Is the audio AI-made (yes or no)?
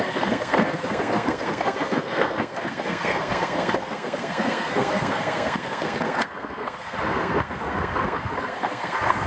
yes